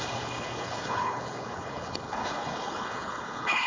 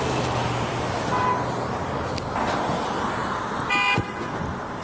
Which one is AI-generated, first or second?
first